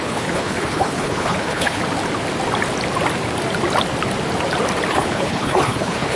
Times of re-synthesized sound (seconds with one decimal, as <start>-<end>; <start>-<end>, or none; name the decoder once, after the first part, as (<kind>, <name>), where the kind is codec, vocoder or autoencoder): 0.0-1.8 (codec, HILCodec); 4.9-6.2